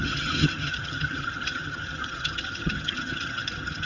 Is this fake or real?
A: fake